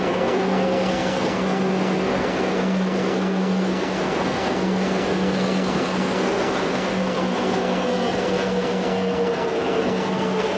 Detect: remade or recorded remade